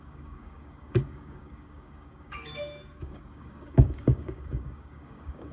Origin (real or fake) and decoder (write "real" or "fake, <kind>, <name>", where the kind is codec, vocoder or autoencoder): fake, codec, DAC